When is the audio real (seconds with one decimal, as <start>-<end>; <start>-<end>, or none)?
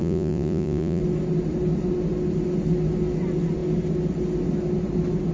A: 1.0-5.3